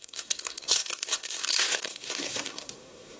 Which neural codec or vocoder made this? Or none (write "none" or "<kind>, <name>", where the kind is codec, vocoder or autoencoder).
codec, SNAC